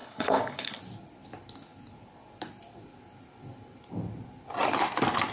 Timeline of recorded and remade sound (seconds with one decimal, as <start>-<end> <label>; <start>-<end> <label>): 0.0-0.8 remade; 0.8-5.3 recorded